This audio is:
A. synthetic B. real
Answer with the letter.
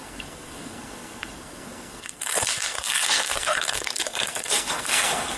A